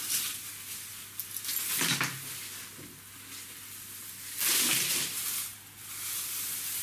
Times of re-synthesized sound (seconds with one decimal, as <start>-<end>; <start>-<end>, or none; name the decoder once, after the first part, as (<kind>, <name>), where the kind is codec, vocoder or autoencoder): none